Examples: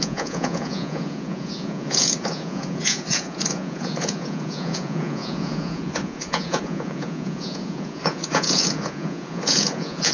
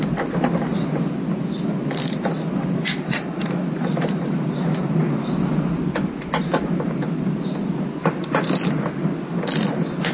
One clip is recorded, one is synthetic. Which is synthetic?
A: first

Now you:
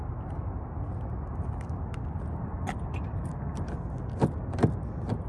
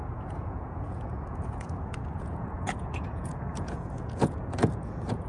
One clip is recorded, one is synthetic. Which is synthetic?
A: second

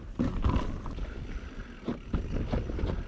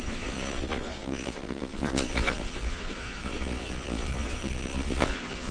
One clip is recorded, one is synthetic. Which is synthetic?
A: second